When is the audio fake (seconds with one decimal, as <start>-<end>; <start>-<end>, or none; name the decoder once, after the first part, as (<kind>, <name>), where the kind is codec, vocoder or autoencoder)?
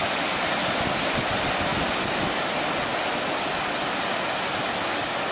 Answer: none